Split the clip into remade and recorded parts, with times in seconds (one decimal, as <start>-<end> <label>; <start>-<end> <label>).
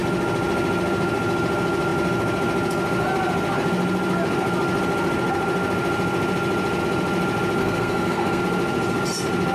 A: 0.0-7.6 recorded; 7.6-8.4 remade; 8.4-9.5 recorded